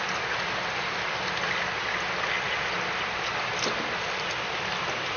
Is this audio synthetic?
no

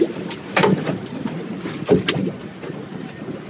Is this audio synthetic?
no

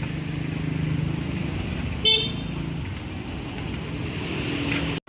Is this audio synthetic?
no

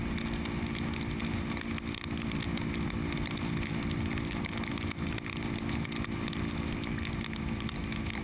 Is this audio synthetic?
no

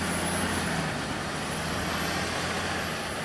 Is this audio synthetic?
no